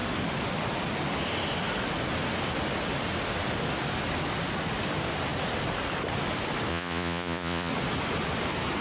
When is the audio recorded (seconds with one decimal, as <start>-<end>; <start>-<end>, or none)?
0.0-6.7; 7.7-8.8

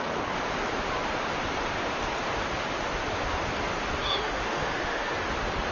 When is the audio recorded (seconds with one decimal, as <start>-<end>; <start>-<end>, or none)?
0.0-4.0; 5.1-5.7